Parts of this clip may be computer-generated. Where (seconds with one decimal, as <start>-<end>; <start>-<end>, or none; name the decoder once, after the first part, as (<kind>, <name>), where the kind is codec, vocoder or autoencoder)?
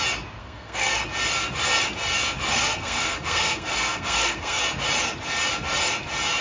0.4-1.0 (codec, SNAC); 2.5-4.6